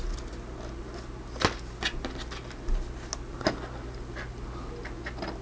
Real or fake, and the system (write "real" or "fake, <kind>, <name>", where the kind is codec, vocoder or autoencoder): real